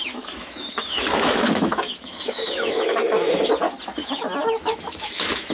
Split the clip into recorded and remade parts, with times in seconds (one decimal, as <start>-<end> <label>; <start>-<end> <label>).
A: 0.0-3.3 remade; 3.3-4.0 recorded; 4.0-5.5 remade